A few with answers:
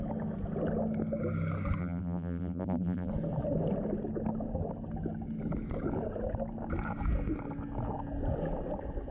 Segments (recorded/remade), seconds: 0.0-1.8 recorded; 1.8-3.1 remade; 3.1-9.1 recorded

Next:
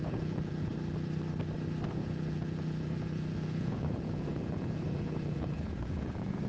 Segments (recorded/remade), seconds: 0.0-0.7 remade; 0.7-1.9 recorded; 1.9-6.5 remade

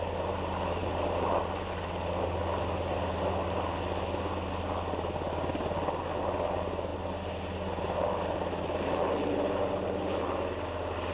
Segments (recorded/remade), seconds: 0.0-0.8 recorded; 0.8-1.4 remade; 1.4-11.1 recorded

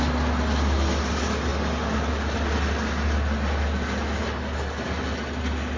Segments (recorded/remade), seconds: 0.0-5.8 recorded

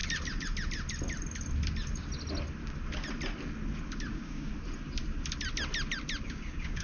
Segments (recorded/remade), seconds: 0.0-4.1 recorded; 4.1-4.5 remade; 4.5-6.2 recorded; 6.2-6.8 remade

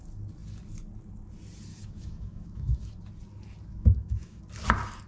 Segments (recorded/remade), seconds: 0.0-1.7 recorded; 1.7-2.9 remade; 2.9-3.7 recorded; 3.7-4.4 remade; 4.4-5.1 recorded